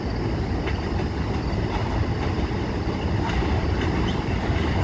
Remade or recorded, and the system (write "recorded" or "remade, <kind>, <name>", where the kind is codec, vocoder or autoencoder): recorded